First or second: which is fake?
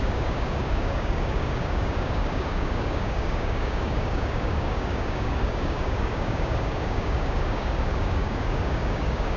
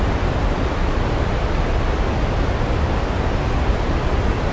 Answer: first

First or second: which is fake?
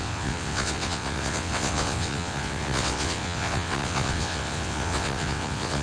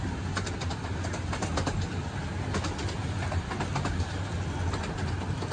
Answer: first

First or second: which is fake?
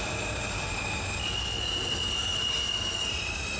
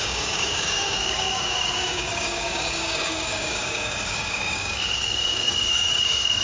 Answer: second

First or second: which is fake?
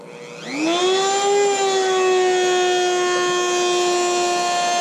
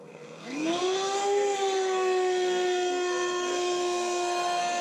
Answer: second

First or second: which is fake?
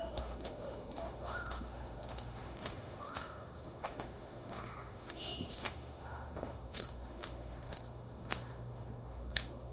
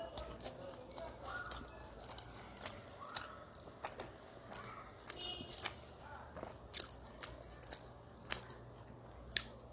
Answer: first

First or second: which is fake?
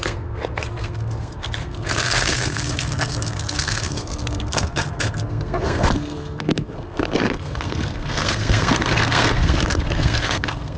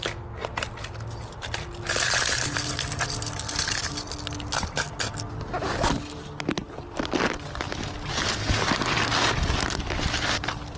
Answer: first